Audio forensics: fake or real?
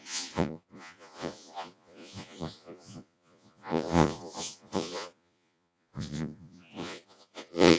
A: fake